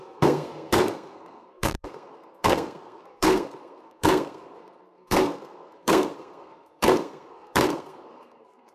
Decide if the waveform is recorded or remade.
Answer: remade